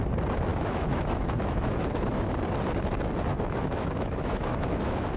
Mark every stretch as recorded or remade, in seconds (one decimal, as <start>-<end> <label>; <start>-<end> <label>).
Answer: 0.0-0.5 recorded; 0.5-2.4 remade; 2.4-3.3 recorded; 3.3-5.2 remade